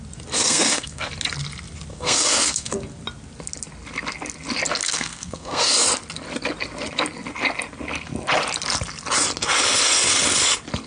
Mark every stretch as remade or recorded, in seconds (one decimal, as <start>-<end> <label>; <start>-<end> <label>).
0.0-0.4 recorded; 0.4-1.1 remade; 1.1-1.9 recorded; 1.9-2.8 remade; 2.8-4.8 recorded; 4.8-5.7 remade; 5.7-10.9 recorded